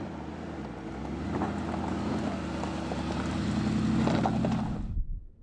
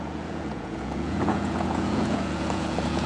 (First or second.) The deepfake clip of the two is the second